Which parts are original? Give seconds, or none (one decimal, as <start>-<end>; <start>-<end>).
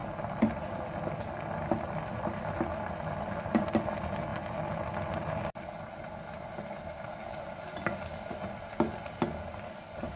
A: 0.0-10.2